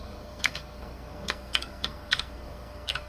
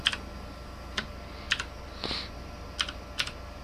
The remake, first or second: first